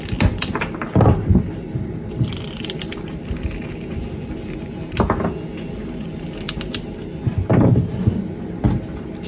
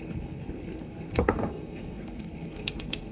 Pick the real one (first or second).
first